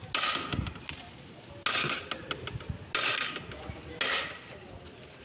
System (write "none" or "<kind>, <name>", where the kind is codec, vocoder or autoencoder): none